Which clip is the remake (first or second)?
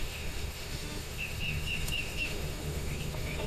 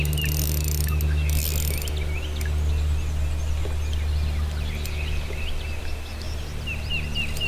first